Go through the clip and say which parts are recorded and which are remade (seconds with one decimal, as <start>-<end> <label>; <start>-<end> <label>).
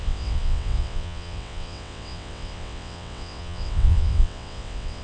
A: 0.0-5.0 remade